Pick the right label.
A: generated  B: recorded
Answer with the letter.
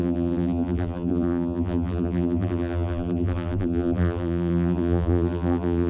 A